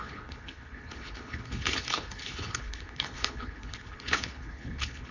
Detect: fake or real fake